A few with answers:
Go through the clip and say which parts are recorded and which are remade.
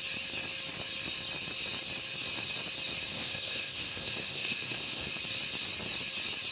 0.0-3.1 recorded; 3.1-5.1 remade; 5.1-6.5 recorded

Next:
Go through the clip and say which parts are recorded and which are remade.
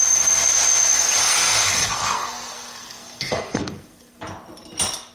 0.0-1.2 recorded; 1.2-4.2 remade; 4.2-5.1 recorded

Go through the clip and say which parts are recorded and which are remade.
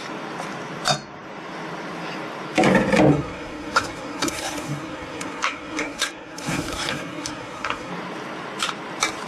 0.0-3.1 recorded; 3.1-7.9 remade; 7.9-9.3 recorded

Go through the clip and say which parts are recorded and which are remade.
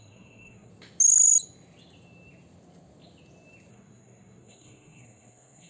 0.0-0.7 remade; 0.7-3.7 recorded; 3.7-5.7 remade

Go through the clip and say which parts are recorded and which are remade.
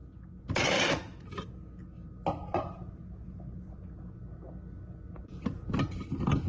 0.0-6.5 recorded